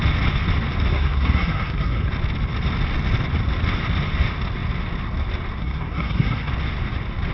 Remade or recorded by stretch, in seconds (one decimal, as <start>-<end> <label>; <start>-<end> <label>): 0.0-0.9 recorded; 0.9-2.1 remade; 2.1-5.6 recorded; 5.6-6.5 remade; 6.5-7.3 recorded